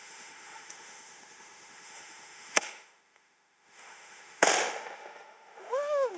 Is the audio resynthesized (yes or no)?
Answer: yes